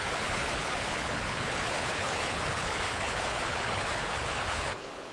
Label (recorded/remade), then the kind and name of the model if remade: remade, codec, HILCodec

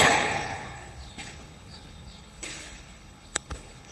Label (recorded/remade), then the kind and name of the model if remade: remade, codec, HILCodec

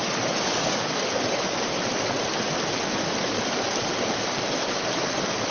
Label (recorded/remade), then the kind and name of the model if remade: recorded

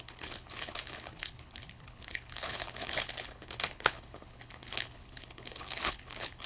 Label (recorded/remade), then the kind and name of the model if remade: remade, codec, HILCodec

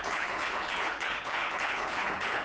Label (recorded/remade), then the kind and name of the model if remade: remade, codec, HILCodec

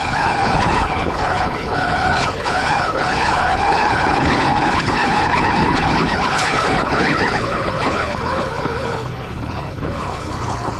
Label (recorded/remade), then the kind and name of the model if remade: remade, codec, HILCodec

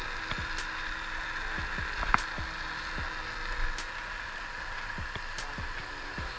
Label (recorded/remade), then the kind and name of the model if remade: recorded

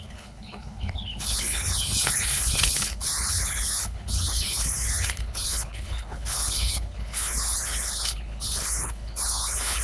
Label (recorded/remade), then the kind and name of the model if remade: remade, codec, HILCodec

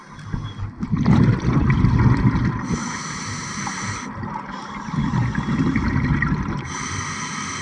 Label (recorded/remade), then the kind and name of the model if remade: recorded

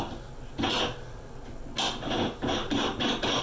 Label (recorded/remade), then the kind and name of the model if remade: recorded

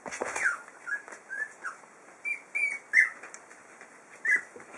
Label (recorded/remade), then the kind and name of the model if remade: recorded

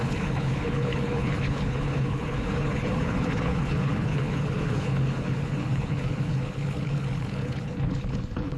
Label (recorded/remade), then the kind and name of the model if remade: remade, codec, HILCodec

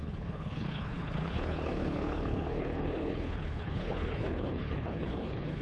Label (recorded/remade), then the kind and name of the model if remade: remade, codec, HILCodec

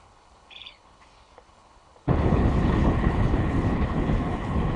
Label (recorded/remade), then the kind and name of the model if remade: remade, codec, HILCodec